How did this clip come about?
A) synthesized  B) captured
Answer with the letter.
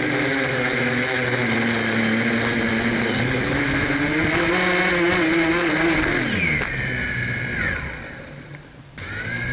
B